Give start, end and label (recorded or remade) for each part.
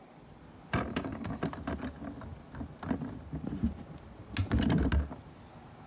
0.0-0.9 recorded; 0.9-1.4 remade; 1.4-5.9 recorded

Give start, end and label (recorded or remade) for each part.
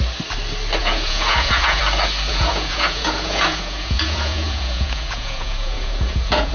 0.0-0.8 recorded; 0.8-1.8 remade; 1.8-2.3 recorded; 2.3-6.5 remade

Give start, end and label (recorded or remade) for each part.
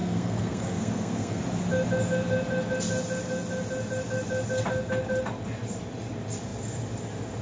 0.0-1.4 remade; 1.4-7.4 recorded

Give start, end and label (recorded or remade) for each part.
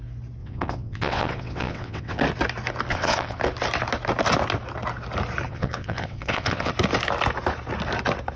0.0-0.4 recorded; 0.4-2.2 remade; 2.2-2.9 recorded; 2.9-3.4 remade; 3.4-5.5 recorded; 5.5-6.7 remade; 6.7-8.4 recorded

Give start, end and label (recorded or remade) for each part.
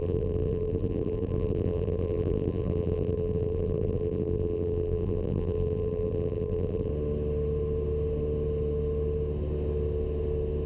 0.0-6.9 remade; 6.9-10.7 recorded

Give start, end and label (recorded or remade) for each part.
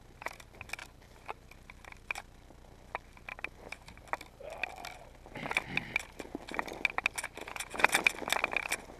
0.0-7.4 recorded; 7.4-8.0 remade; 8.0-9.0 recorded